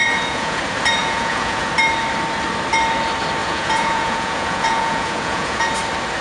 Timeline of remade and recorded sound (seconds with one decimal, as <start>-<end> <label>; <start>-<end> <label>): 0.0-0.6 remade; 0.6-1.0 recorded; 1.0-1.7 remade; 1.7-3.4 recorded; 3.4-5.7 remade; 5.7-6.2 recorded